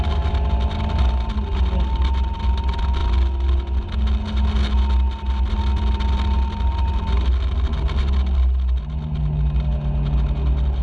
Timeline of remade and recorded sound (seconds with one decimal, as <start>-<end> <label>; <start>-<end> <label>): 0.0-10.8 recorded